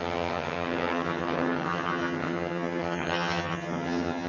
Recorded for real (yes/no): no